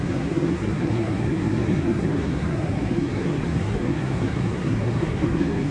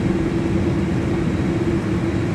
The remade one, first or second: first